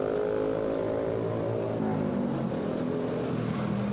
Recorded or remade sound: recorded